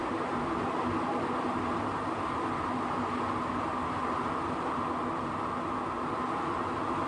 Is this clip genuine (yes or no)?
yes